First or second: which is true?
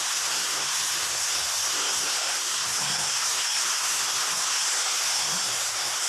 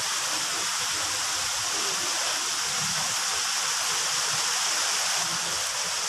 second